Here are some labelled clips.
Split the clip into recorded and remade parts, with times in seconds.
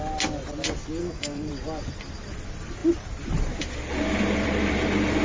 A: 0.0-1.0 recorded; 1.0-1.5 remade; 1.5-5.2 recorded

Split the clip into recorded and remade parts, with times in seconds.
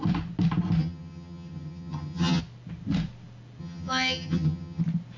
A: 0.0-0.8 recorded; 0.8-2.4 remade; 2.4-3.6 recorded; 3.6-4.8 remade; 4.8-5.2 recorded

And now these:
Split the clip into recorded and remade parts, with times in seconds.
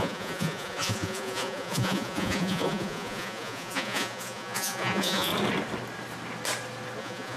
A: 0.0-5.3 remade; 5.3-7.0 recorded; 7.0-7.4 remade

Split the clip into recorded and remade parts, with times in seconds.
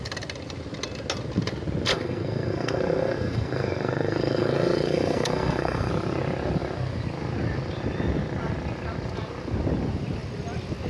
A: 0.0-1.9 recorded; 1.9-5.9 remade; 5.9-10.9 recorded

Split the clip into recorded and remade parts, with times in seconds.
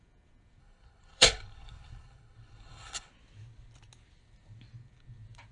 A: 0.0-0.6 recorded; 0.6-3.1 remade; 3.1-5.5 recorded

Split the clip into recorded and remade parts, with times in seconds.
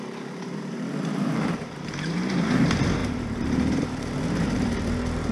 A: 0.0-5.3 remade